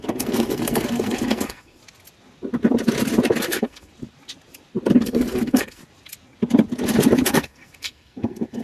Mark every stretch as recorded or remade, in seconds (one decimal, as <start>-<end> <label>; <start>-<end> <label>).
0.0-1.8 remade; 1.8-3.4 recorded; 3.4-3.9 remade; 3.9-5.0 recorded; 5.0-5.8 remade; 5.8-7.3 recorded; 7.3-8.6 remade